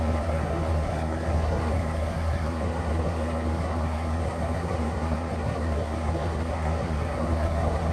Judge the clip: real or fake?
fake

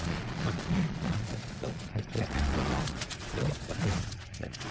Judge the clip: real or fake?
fake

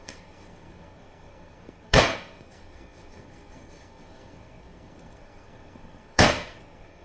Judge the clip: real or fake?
fake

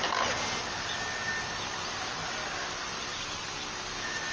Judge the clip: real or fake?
real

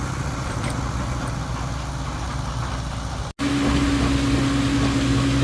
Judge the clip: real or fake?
real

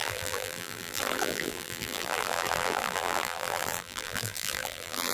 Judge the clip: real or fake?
fake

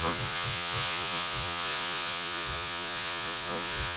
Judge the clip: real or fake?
fake